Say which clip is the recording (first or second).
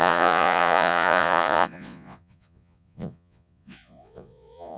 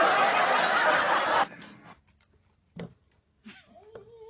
second